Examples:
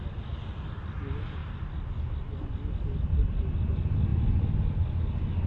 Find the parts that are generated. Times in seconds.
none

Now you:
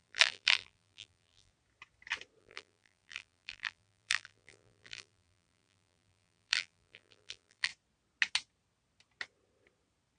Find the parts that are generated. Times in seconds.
0.0-1.5; 2.4-7.7

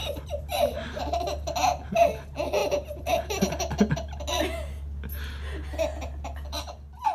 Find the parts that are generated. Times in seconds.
0.0-1.0

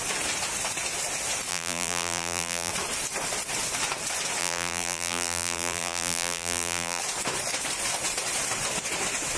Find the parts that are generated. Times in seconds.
1.5-2.7; 4.4-7.0

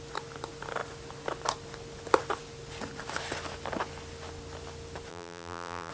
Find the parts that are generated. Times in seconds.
5.1-5.9

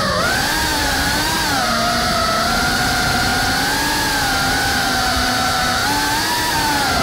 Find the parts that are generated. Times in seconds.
0.0-3.3; 4.7-5.8; 6.5-7.0

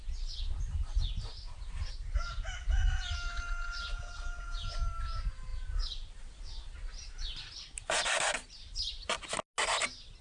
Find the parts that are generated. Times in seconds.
none